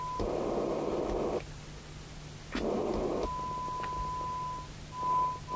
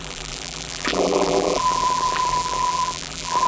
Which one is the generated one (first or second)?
second